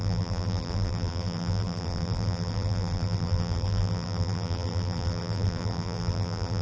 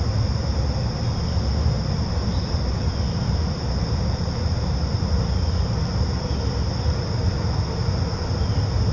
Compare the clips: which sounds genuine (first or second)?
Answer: second